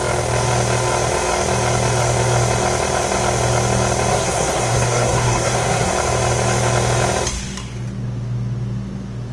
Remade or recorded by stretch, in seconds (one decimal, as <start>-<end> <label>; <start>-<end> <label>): 0.0-4.1 recorded; 4.1-5.9 remade; 5.9-9.3 recorded